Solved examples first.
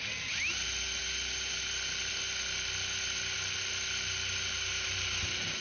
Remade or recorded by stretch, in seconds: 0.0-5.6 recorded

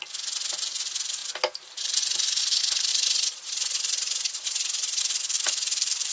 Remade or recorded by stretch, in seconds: 0.0-2.9 recorded; 2.9-5.0 remade; 5.0-6.1 recorded

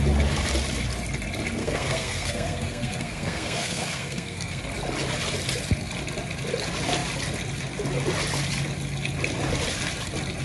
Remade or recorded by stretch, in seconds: 0.0-1.6 recorded; 1.6-4.6 remade; 4.6-10.4 recorded